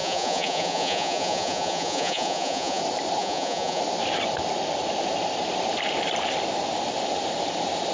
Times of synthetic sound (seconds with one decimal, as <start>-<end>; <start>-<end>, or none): 0.0-2.8; 3.2-3.8